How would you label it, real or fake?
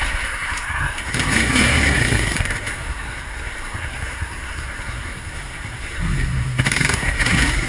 fake